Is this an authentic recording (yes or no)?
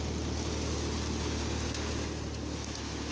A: yes